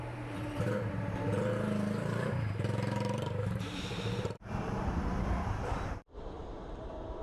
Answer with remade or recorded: remade